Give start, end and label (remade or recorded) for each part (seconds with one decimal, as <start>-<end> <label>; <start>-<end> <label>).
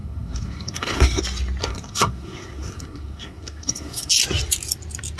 0.0-1.2 remade; 1.2-1.6 recorded; 1.6-4.1 remade; 4.1-5.2 recorded